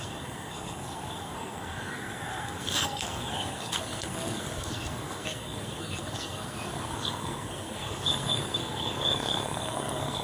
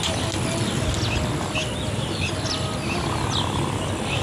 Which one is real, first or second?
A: second